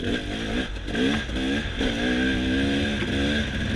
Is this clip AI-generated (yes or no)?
no